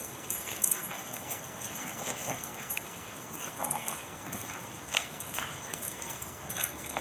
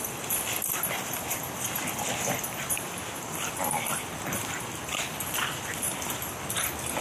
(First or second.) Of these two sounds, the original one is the second